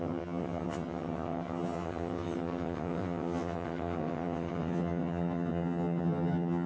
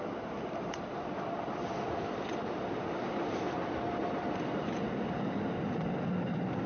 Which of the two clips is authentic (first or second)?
second